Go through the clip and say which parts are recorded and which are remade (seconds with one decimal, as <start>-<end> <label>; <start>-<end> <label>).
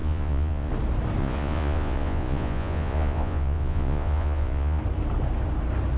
0.0-0.7 remade; 0.7-1.2 recorded; 1.2-4.8 remade; 4.8-6.0 recorded